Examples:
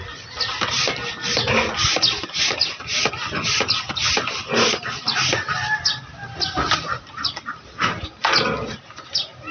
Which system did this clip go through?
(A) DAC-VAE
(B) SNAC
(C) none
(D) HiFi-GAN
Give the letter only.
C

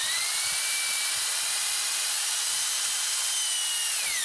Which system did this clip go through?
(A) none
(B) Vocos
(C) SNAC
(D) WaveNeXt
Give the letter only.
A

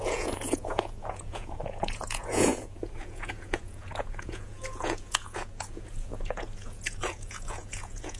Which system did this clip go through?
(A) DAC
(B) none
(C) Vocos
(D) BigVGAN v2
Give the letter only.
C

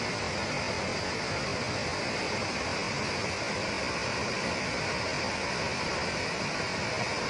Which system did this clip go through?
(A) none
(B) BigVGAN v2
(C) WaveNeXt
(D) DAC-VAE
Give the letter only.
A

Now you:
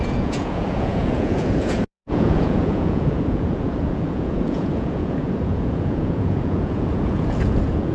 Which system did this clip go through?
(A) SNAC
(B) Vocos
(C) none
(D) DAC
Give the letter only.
B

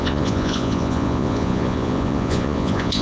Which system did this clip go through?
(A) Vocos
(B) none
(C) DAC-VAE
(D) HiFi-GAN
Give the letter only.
A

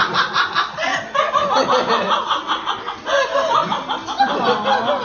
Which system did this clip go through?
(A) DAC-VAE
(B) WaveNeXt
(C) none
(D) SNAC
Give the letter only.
C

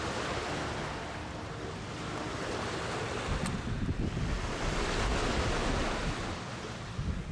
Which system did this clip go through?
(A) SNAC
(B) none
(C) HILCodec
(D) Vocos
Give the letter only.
B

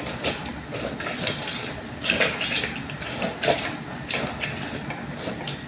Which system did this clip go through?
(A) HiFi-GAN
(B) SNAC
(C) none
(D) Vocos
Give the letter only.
C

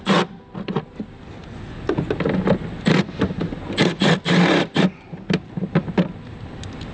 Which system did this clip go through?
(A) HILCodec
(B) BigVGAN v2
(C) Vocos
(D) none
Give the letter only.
D